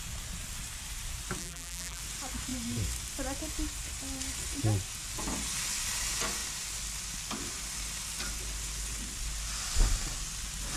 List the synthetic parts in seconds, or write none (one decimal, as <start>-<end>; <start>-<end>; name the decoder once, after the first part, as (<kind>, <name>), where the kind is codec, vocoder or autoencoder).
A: 1.4-2.0 (vocoder, BigVGAN v2)